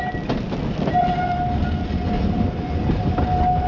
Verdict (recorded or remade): recorded